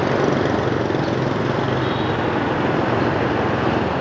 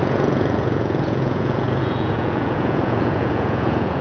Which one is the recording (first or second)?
first